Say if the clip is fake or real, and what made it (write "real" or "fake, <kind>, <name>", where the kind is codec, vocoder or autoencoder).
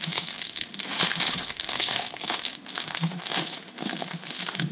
fake, autoencoder, DAC-VAE